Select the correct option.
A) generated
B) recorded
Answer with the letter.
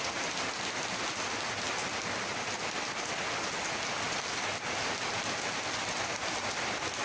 B